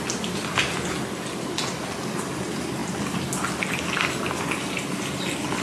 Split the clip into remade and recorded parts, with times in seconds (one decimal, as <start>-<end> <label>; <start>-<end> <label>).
0.0-5.6 recorded